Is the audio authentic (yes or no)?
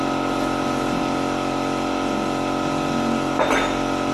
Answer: yes